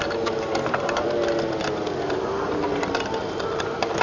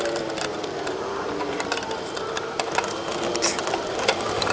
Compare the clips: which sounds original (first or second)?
first